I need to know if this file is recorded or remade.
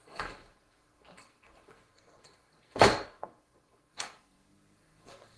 remade